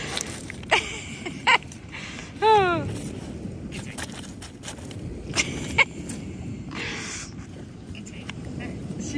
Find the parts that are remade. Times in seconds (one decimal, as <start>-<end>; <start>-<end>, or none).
0.0-2.2; 6.3-9.2